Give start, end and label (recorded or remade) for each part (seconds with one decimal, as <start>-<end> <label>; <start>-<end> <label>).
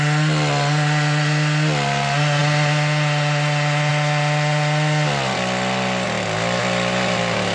0.0-7.5 recorded